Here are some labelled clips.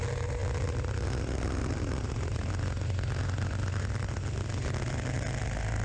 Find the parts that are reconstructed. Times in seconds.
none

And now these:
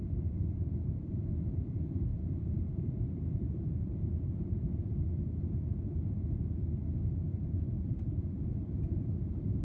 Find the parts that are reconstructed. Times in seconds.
2.1-5.1 (vocoder, BigVGAN v2); 7.3-9.6